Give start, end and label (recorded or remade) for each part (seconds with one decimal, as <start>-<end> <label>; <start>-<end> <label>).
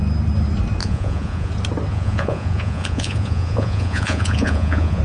0.0-0.8 recorded; 0.8-1.5 remade; 1.5-1.9 recorded; 1.9-5.0 remade